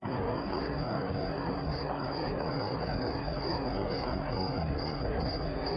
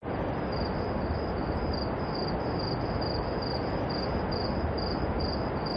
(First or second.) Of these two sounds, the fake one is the first